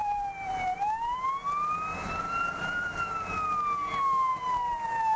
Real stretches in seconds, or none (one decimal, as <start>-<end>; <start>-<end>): 1.3-2.0; 3.1-4.3